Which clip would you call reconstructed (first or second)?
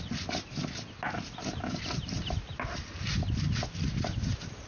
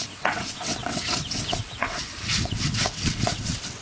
second